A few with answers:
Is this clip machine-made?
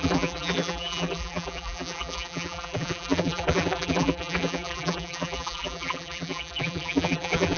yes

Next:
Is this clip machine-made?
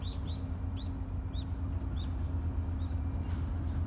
no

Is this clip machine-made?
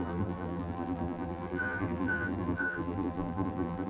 yes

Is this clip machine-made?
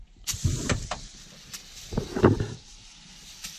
yes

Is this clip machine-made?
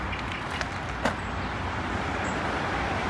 no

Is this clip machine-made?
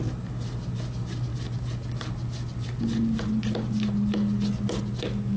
no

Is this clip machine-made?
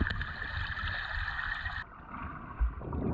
no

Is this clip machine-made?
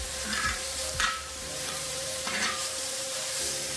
yes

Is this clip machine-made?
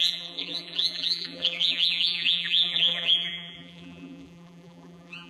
yes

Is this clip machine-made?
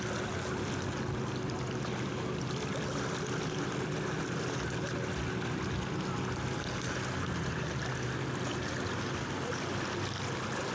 no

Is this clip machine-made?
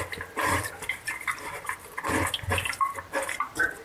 no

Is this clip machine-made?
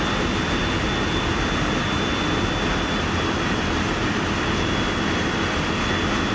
no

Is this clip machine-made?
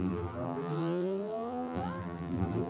yes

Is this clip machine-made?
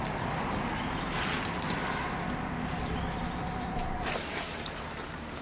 no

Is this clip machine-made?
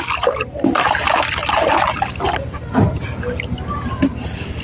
no